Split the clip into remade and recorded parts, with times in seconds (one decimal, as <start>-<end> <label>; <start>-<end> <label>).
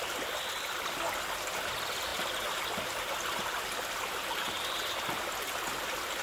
0.0-6.2 recorded